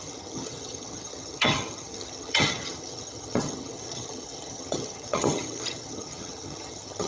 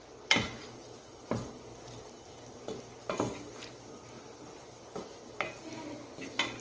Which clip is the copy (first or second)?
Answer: first